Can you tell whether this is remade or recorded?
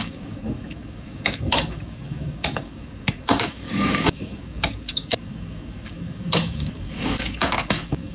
remade